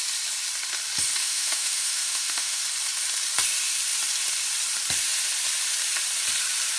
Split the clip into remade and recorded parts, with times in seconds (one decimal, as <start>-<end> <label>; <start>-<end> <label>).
0.0-1.2 recorded; 1.2-2.6 remade; 2.6-6.8 recorded